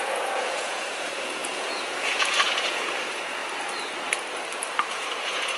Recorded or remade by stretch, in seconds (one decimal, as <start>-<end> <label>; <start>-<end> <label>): 0.0-3.4 remade; 3.4-4.9 recorded; 4.9-5.6 remade